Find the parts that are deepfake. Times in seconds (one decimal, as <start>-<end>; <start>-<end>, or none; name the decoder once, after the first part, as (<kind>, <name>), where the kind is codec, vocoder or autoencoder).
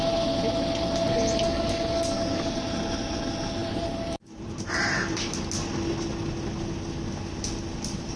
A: 3.6-5.4 (vocoder, BigVGAN v2)